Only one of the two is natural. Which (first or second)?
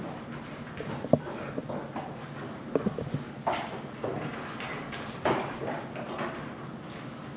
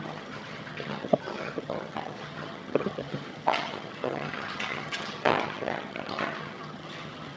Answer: first